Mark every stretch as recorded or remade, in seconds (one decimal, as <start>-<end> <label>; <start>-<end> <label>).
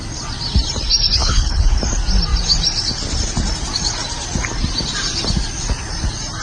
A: 0.0-1.2 recorded; 1.2-1.8 remade; 1.8-6.4 recorded